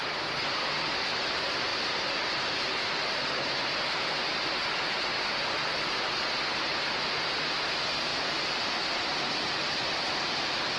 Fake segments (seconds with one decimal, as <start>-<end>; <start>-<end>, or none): 1.7-2.2; 5.1-6.0; 8.1-10.8